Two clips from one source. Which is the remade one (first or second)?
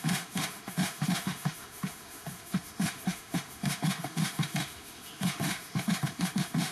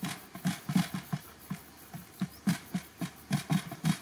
first